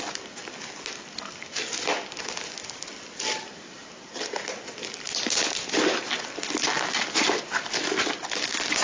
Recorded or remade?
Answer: recorded